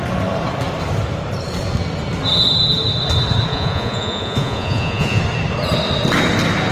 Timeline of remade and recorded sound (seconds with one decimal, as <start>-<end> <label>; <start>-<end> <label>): 0.0-3.5 recorded; 3.5-5.2 remade; 5.2-6.7 recorded